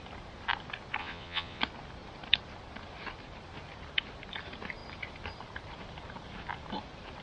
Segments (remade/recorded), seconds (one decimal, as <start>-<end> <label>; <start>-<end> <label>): 0.0-1.0 recorded; 1.0-1.6 remade; 1.6-7.2 recorded